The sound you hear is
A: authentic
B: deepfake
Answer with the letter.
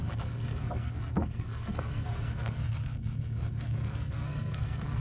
B